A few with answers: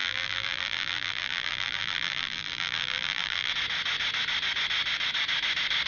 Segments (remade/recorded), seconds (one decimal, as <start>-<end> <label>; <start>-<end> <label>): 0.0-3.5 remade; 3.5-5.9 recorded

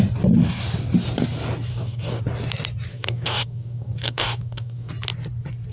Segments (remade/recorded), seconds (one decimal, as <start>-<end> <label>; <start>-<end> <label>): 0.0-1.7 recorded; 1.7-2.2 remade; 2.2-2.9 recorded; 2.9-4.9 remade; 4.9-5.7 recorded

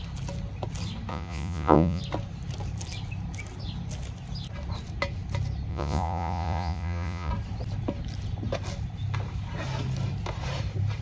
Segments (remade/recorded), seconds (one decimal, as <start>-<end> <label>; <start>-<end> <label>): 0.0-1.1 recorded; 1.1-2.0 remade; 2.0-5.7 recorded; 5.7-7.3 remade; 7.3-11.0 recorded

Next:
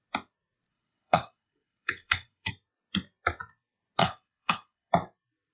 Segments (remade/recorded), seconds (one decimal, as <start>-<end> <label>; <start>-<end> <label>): 0.0-0.7 recorded; 0.7-2.5 remade; 2.5-4.0 recorded; 4.0-4.9 remade; 4.9-5.5 recorded

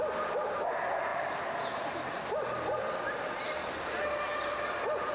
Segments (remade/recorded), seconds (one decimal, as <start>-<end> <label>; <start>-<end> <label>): 0.0-1.1 recorded; 1.1-4.2 remade; 4.2-5.1 recorded

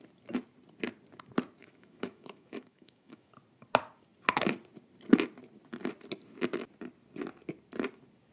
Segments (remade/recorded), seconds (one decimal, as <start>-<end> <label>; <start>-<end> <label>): 0.0-1.6 recorded; 1.6-3.3 remade; 3.3-8.3 recorded